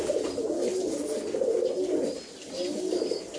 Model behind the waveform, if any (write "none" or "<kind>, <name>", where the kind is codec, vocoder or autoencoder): none